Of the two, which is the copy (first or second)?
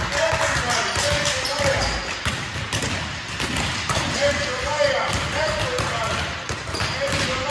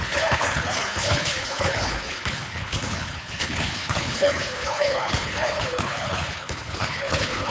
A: second